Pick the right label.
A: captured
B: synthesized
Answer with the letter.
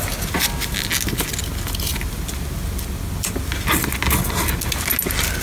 A